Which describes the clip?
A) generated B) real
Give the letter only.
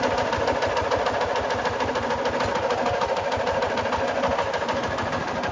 B